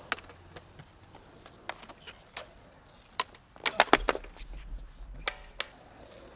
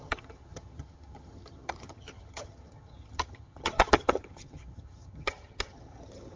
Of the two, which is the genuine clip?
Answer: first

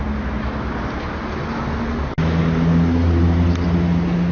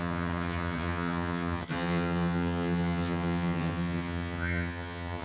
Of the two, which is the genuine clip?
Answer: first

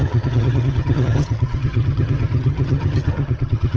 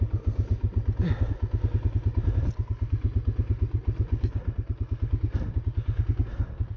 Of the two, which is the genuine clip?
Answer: second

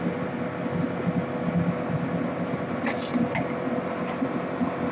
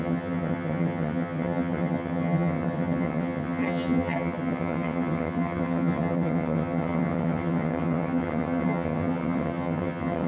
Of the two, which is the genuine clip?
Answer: first